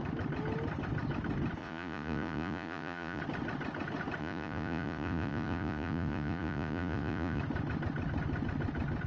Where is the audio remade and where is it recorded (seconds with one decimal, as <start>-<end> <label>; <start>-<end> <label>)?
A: 0.0-1.6 recorded; 1.6-3.2 remade; 3.2-4.2 recorded; 4.2-7.4 remade; 7.4-9.1 recorded